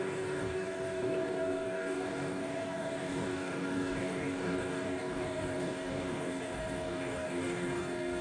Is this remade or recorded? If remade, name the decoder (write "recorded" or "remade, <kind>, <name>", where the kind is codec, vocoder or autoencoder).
remade, codec, DAC